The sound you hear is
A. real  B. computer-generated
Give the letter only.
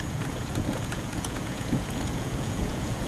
B